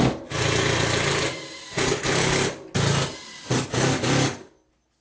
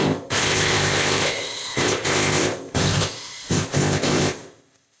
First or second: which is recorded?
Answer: first